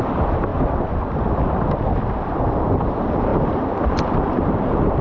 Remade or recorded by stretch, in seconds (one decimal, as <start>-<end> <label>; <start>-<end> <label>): 0.0-0.5 remade; 0.5-2.6 recorded; 2.6-5.0 remade